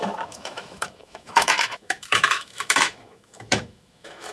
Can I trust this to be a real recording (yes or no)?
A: no